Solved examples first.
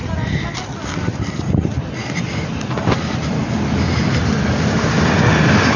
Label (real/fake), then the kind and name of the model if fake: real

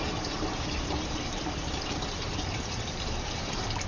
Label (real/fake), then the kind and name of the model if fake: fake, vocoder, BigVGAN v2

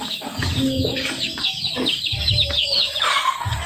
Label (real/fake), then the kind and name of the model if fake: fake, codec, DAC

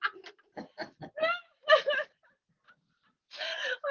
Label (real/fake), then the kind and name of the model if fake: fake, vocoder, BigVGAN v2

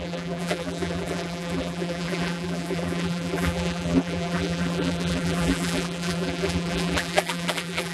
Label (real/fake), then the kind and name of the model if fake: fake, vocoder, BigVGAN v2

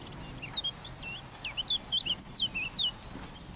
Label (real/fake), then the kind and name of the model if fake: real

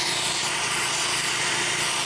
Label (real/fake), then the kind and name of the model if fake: real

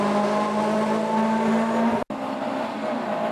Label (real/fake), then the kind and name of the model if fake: real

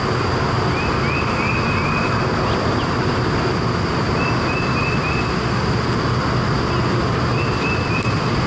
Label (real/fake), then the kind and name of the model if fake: real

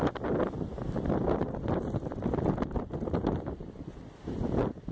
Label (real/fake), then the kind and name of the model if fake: fake, vocoder, BigVGAN v2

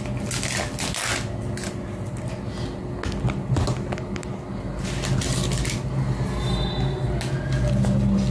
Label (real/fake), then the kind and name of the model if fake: real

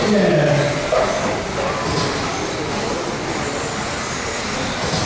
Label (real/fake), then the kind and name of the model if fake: real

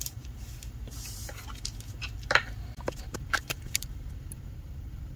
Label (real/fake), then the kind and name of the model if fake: fake, vocoder, BigVGAN v2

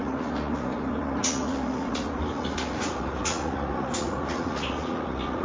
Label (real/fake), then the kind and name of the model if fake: fake, vocoder, Vocos